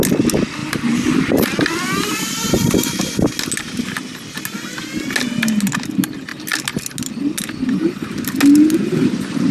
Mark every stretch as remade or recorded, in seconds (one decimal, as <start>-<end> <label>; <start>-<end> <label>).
0.0-0.6 recorded; 0.6-3.3 remade; 3.3-9.5 recorded